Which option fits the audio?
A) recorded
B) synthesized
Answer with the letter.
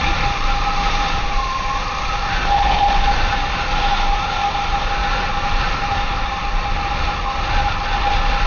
A